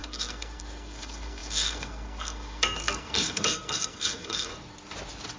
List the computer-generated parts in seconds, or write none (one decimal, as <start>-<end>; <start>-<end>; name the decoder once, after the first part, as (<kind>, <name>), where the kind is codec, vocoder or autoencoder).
0.0-4.5 (codec, SNAC)